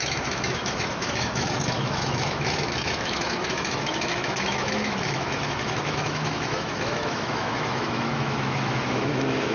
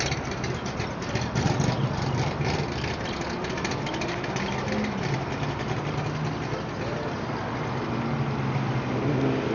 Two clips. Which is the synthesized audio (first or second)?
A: first